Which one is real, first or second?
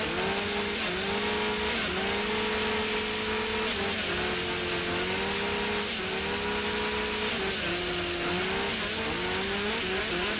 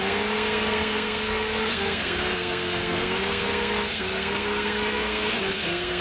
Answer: first